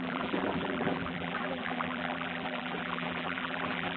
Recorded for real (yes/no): no